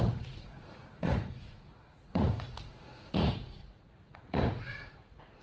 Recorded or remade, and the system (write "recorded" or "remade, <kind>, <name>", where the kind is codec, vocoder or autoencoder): remade, vocoder, Vocos